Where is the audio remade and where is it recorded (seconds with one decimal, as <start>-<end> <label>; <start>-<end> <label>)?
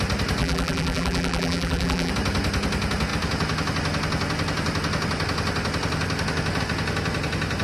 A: 0.0-0.4 recorded; 0.4-2.1 remade; 2.1-7.6 recorded